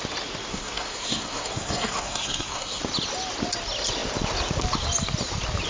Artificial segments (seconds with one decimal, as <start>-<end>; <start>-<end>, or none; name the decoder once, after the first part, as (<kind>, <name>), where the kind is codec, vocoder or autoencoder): 0.5-2.8 (codec, SNAC)